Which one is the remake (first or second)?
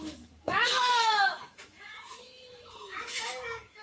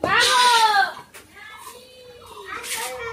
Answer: first